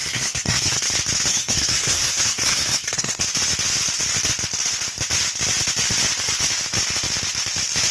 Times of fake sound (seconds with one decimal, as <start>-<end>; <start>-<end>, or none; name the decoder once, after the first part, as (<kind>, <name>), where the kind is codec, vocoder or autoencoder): 0.0-0.9 (codec, SNAC); 1.3-3.2

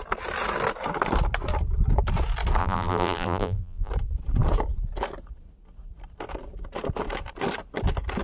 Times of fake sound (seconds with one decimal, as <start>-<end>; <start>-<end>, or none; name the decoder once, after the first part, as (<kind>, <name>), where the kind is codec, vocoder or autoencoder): 2.6-3.9 (vocoder, BigVGAN v2)

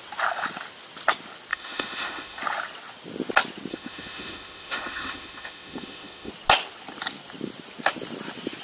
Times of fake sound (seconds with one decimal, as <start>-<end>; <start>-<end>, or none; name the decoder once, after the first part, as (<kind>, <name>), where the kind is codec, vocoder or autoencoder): 1.5-2.4 (autoencoder, DAC-VAE); 3.7-6.3

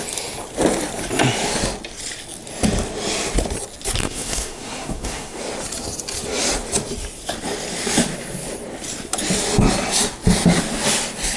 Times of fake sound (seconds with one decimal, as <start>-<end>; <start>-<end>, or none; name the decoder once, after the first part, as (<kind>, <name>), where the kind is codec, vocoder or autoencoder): 4.0-5.4 (codec, SNAC)